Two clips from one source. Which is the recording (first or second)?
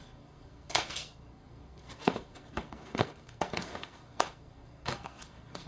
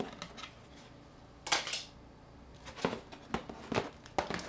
second